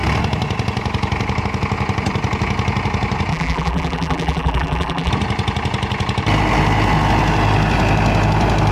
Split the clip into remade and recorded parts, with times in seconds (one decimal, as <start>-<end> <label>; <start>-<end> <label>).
0.0-3.3 recorded; 3.3-5.1 remade; 5.1-8.7 recorded